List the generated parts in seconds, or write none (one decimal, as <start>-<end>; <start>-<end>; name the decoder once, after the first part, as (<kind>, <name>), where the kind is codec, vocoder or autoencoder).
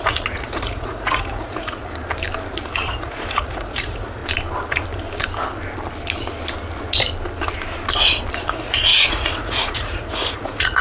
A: 0.0-1.8 (vocoder, Vocos); 2.9-4.2; 8.5-10.8